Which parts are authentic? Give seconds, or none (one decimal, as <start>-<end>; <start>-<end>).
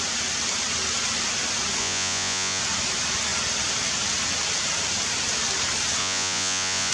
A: 0.0-1.8; 2.6-6.0